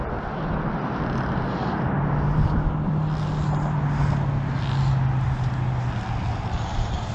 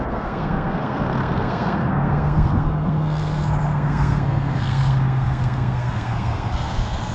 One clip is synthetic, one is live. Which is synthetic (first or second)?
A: second